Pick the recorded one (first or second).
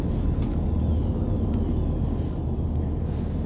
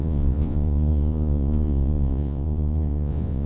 first